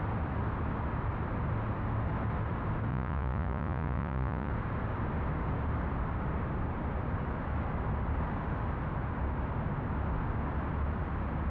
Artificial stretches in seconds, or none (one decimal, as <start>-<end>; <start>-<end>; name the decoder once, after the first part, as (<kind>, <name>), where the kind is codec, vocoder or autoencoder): 2.9-4.5 (vocoder, Vocos)